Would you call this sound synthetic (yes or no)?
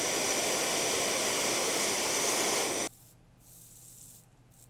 no